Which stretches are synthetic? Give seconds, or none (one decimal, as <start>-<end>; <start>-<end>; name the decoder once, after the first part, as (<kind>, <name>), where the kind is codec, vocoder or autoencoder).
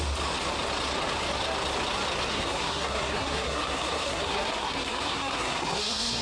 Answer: 2.3-6.2 (codec, SNAC)